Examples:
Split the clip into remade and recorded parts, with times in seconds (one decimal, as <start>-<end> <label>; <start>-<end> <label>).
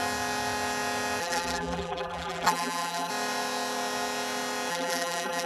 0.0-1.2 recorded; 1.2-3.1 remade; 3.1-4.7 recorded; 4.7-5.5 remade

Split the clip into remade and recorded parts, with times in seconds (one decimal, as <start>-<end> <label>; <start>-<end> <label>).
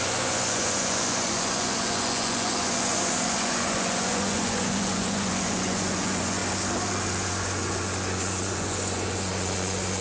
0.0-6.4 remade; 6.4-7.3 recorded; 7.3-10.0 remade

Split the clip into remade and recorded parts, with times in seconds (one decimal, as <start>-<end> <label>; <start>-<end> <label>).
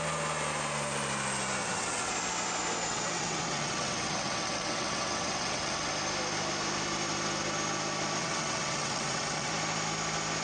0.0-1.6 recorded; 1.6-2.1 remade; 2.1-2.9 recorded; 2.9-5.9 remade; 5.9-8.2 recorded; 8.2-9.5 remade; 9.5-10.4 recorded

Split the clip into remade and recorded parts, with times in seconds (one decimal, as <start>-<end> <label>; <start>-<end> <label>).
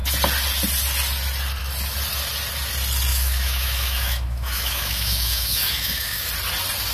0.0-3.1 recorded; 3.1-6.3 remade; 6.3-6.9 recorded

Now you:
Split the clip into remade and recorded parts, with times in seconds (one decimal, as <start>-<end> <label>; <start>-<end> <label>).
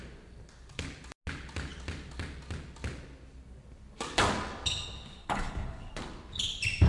0.0-5.2 recorded; 5.2-5.9 remade; 5.9-6.9 recorded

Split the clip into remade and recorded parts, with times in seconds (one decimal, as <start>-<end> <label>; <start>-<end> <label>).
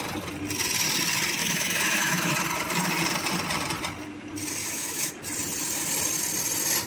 0.0-1.4 recorded; 1.4-2.3 remade; 2.3-4.6 recorded; 4.6-5.1 remade; 5.1-6.9 recorded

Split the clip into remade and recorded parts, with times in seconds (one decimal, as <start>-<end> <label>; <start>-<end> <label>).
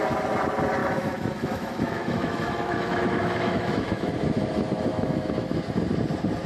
0.0-0.8 recorded; 0.8-4.1 remade; 4.1-4.9 recorded; 4.9-5.6 remade; 5.6-6.5 recorded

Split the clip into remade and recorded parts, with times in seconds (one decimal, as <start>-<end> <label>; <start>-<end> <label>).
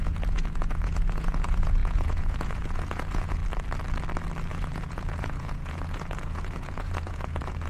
0.0-3.4 remade; 3.4-4.5 recorded; 4.5-7.7 remade